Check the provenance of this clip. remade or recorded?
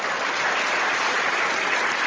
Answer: recorded